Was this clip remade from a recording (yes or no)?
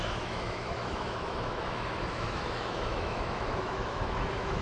yes